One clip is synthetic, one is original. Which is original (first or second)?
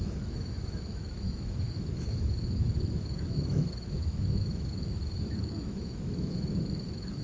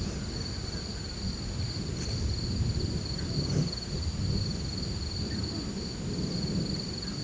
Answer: second